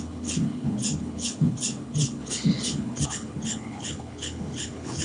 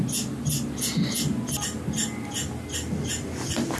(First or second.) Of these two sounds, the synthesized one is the first